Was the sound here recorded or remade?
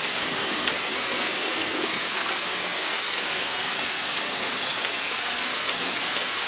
remade